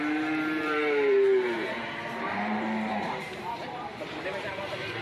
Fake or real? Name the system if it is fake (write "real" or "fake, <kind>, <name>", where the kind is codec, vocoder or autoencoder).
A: fake, vocoder, BigVGAN v2